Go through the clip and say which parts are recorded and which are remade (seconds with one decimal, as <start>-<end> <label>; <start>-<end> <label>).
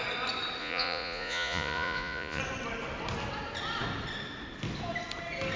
0.0-0.6 recorded; 0.6-2.4 remade; 2.4-5.6 recorded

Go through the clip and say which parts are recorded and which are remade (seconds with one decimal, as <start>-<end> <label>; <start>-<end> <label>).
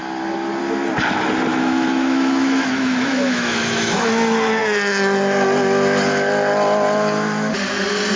0.0-1.5 recorded; 1.5-4.1 remade; 4.1-8.2 recorded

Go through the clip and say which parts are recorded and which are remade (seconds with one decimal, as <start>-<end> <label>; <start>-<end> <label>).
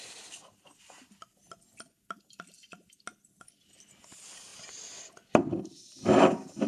0.0-6.7 recorded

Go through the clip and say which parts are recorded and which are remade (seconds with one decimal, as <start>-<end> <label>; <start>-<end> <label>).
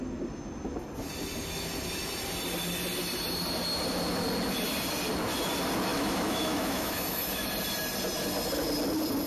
0.0-5.9 recorded; 5.9-7.5 remade; 7.5-9.3 recorded